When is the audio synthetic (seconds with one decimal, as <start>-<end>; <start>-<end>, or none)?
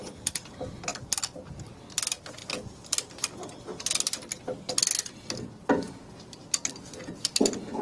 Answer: none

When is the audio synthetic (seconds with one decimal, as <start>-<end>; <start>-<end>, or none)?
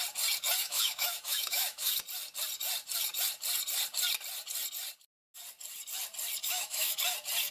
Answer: 0.6-2.0; 6.4-7.0